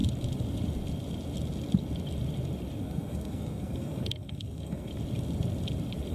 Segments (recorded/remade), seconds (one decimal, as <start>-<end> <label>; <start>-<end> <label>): 0.0-2.8 recorded; 2.8-4.9 remade; 4.9-6.1 recorded